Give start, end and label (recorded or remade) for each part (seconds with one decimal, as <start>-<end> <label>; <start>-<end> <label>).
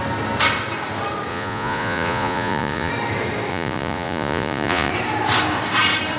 0.0-1.3 recorded; 1.3-2.9 remade; 2.9-3.5 recorded; 3.5-4.9 remade; 4.9-6.2 recorded